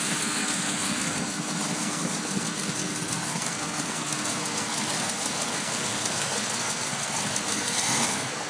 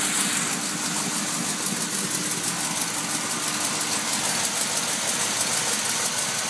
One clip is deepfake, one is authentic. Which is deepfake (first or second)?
first